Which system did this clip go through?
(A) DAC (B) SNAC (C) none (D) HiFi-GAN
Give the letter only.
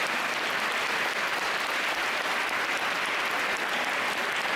C